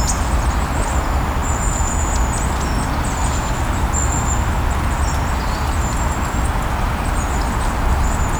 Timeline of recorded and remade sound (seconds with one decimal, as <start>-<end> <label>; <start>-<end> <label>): 0.0-8.4 recorded